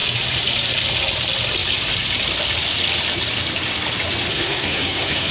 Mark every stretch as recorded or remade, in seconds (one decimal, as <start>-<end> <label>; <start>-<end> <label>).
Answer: 0.0-4.3 recorded; 4.3-5.3 remade